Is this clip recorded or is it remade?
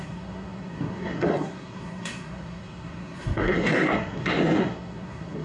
remade